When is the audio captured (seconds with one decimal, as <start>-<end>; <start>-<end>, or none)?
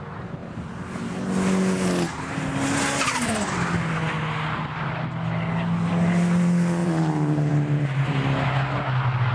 0.0-6.8; 7.5-9.3